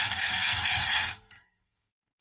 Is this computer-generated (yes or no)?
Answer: yes